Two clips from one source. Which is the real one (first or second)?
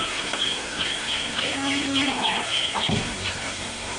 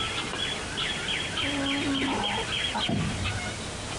second